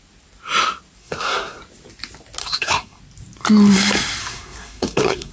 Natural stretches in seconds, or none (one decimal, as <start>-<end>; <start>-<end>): 0.0-1.0; 1.6-2.4; 3.0-4.2